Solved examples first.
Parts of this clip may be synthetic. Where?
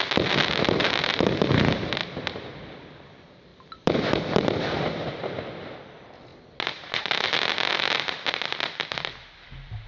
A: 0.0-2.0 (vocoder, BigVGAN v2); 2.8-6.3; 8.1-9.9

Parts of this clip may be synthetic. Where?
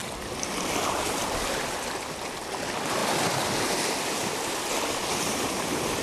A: none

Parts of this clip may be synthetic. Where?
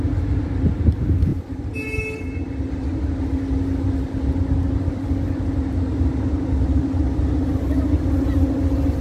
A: none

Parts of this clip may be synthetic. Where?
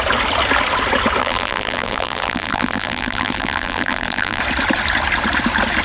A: 1.2-4.4 (vocoder, BigVGAN v2)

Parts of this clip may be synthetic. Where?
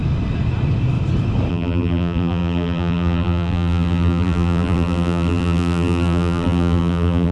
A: 1.5-7.3 (vocoder, BigVGAN v2)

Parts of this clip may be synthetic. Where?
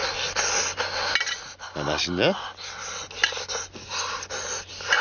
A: none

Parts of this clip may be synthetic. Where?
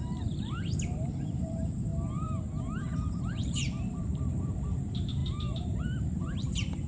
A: 0.0-1.9 (vocoder, BigVGAN v2); 2.6-6.9